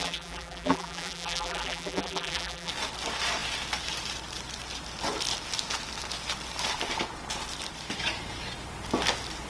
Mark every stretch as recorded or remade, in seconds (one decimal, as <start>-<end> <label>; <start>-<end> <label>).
0.0-2.7 remade; 2.7-9.5 recorded